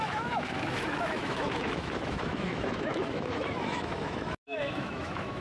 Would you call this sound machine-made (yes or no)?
yes